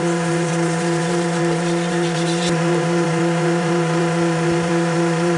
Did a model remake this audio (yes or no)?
yes